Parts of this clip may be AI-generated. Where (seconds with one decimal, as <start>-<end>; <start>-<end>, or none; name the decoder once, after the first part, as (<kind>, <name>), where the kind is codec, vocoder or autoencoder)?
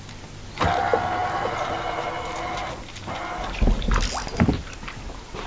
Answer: none